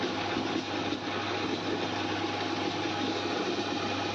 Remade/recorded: recorded